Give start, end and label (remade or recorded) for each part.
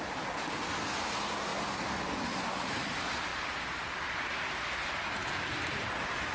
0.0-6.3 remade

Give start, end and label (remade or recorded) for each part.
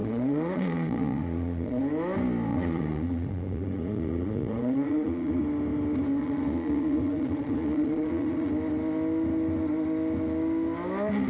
0.0-1.8 remade; 1.8-2.5 recorded; 2.5-5.4 remade; 5.4-6.2 recorded; 6.2-8.5 remade; 8.5-11.3 recorded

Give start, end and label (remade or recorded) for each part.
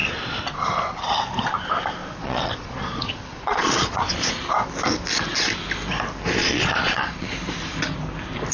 0.0-2.0 recorded; 2.0-4.4 remade; 4.4-6.4 recorded; 6.4-7.3 remade; 7.3-8.5 recorded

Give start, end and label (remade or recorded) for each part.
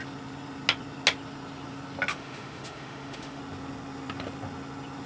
0.0-2.1 recorded; 2.1-3.4 remade; 3.4-5.1 recorded